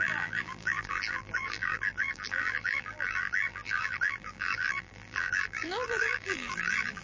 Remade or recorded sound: remade